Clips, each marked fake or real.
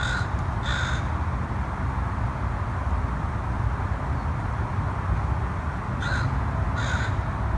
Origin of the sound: real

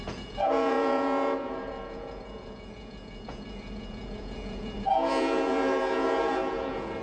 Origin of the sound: fake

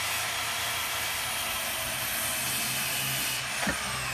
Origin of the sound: real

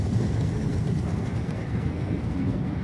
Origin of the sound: fake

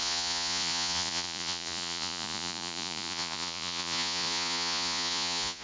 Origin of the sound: fake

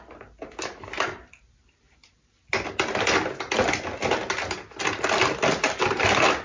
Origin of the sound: real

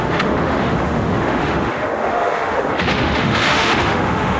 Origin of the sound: fake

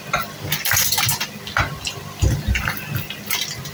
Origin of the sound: real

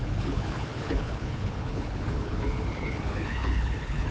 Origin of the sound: fake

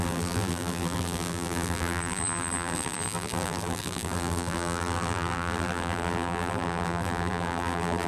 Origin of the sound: fake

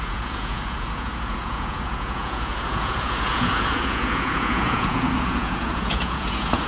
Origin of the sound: fake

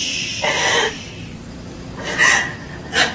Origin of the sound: fake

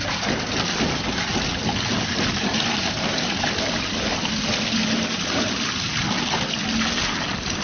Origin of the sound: real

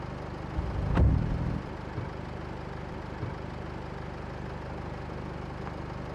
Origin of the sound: real